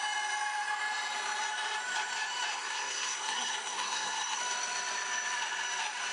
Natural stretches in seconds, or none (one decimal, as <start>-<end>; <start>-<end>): 0.0-2.5; 4.4-6.1